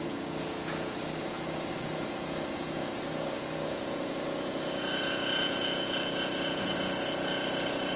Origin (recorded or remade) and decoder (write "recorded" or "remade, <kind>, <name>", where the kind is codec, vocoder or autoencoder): remade, vocoder, Vocos